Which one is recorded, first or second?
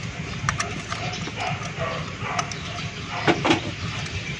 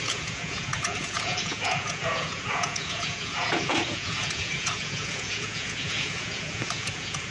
first